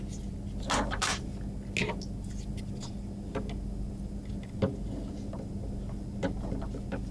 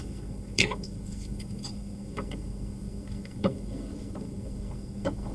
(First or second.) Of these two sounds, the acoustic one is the first